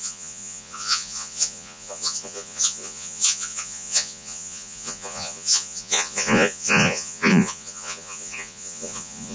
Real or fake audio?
fake